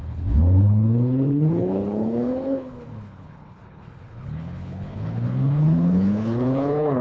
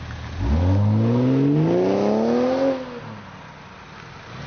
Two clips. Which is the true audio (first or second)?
second